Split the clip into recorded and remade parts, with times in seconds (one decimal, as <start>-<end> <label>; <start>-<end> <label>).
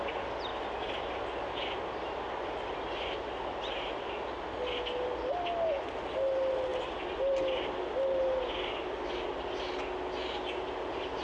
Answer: 0.0-6.7 recorded; 6.7-7.3 remade; 7.3-11.2 recorded